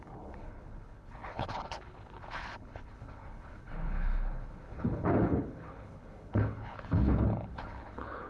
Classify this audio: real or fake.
fake